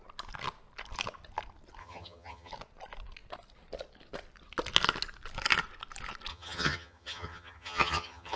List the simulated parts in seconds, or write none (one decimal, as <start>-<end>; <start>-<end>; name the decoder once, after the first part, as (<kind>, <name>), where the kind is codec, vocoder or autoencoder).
1.8-2.5 (vocoder, HiFi-GAN); 6.3-8.4